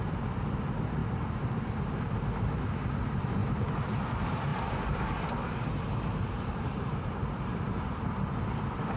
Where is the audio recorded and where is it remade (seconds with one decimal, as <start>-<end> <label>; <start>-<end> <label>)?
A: 0.0-1.0 recorded; 1.0-1.7 remade; 1.7-3.4 recorded; 3.4-4.1 remade; 4.1-4.5 recorded; 4.5-8.0 remade; 8.0-9.0 recorded